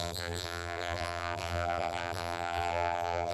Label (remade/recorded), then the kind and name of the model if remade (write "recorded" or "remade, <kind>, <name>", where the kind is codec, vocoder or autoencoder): remade, vocoder, BigVGAN v2